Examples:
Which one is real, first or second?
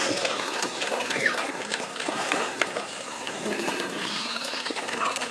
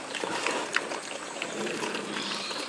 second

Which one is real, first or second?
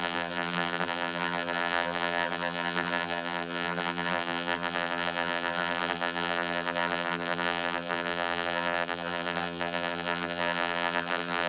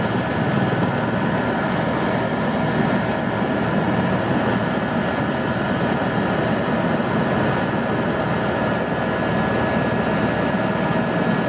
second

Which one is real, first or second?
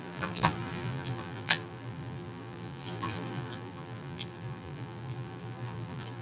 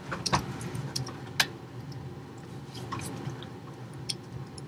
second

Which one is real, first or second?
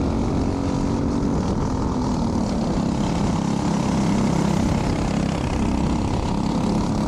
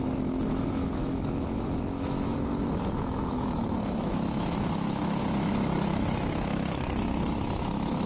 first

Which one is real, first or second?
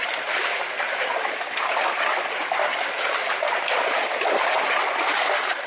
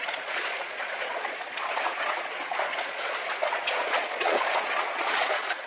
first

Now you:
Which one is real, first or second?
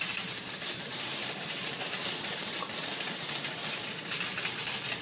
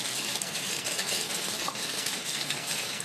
first